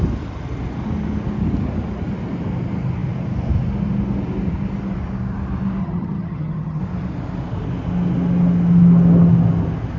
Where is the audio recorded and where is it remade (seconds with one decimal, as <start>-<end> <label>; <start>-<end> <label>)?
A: 0.0-5.8 recorded; 5.8-6.8 remade; 6.8-10.0 recorded